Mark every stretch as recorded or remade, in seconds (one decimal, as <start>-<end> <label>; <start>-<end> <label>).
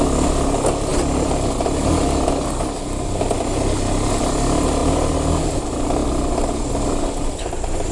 0.0-7.9 recorded